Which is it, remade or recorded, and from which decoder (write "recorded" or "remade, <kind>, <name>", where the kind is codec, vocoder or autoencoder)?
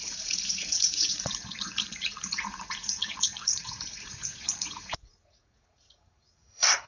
remade, vocoder, Vocos